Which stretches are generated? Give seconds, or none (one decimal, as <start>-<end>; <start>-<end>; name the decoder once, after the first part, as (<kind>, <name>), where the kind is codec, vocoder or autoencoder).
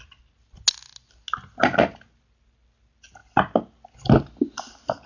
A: none